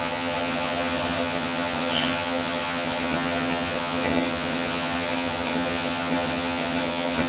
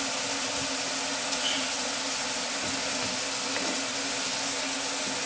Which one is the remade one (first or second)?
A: first